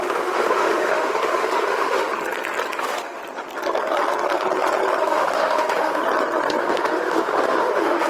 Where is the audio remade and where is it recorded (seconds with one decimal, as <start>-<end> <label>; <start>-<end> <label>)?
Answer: 0.0-2.1 remade; 2.1-2.8 recorded; 2.8-3.2 remade; 3.2-5.0 recorded; 5.0-6.0 remade; 6.0-6.6 recorded; 6.6-8.1 remade